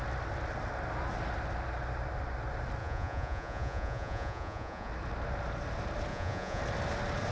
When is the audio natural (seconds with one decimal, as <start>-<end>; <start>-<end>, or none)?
0.0-2.8; 4.9-6.1; 6.6-7.3

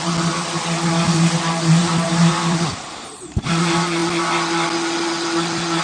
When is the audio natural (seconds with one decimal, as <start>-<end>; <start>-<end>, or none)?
0.0-1.8; 3.6-5.8

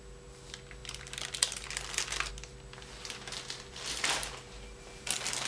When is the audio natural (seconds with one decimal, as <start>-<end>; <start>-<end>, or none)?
0.0-5.5